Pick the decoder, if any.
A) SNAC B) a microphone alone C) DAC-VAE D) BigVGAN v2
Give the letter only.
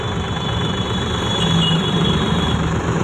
D